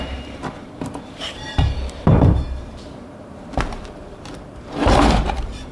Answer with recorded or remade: remade